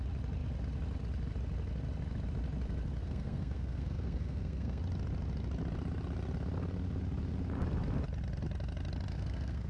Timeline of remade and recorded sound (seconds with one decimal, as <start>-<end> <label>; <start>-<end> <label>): 0.0-3.0 recorded; 3.0-4.8 remade; 4.8-9.1 recorded; 9.1-9.7 remade